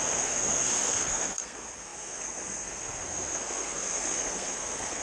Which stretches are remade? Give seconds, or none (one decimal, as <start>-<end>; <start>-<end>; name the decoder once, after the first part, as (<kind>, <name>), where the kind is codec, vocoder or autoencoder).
0.0-5.0 (codec, SNAC)